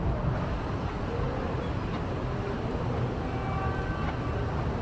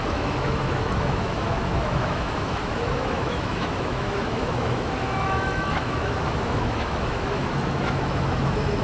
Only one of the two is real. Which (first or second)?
first